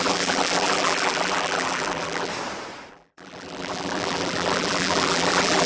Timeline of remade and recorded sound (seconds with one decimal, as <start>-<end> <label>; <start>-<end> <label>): 0.0-2.3 remade; 2.3-2.9 recorded; 2.9-5.7 remade